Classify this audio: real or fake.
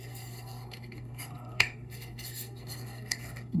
fake